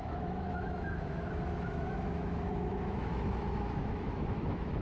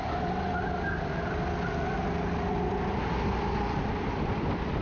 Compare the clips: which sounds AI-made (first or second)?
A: first